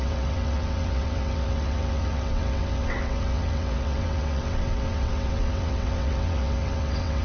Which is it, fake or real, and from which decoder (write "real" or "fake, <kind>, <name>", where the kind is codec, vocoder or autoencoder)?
fake, vocoder, WaveNeXt